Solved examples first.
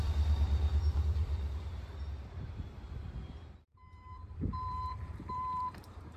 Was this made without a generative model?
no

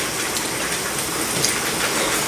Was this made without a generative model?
yes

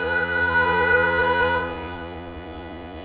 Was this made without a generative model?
no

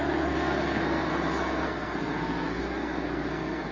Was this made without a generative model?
no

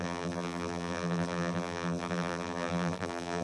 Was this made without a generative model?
no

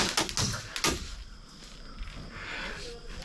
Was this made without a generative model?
yes